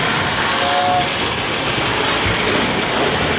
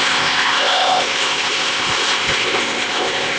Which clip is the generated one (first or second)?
second